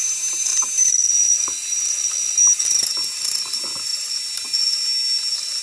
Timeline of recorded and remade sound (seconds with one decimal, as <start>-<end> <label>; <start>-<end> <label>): 0.0-5.6 recorded